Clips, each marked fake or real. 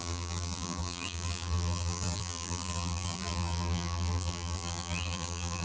fake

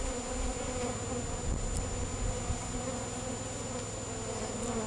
real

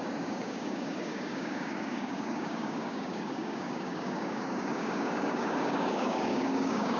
fake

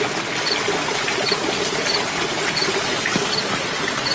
real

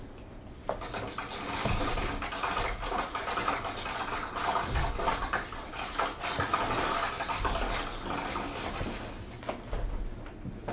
real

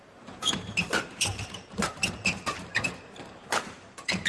fake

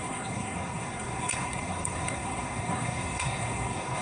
fake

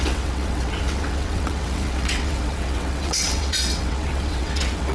fake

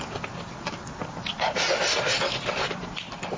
fake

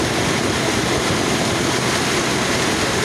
real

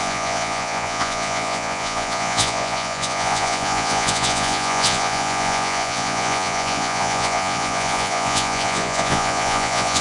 fake